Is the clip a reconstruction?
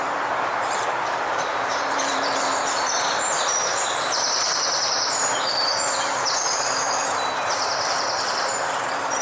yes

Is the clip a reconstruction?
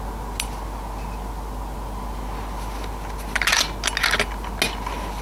no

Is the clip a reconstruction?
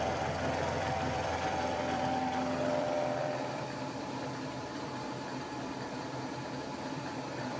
yes